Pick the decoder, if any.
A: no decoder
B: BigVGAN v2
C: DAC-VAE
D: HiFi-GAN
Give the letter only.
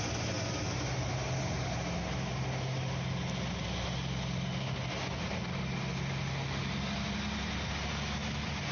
A